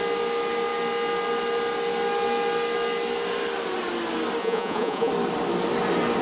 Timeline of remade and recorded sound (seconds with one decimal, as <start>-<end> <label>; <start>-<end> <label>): 0.0-4.4 recorded; 4.4-5.1 remade; 5.1-6.2 recorded